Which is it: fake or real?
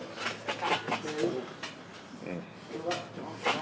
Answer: real